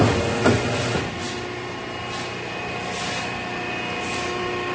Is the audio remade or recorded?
recorded